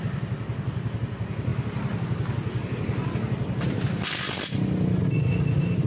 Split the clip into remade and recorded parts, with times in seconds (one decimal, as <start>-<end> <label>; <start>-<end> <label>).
0.0-5.9 recorded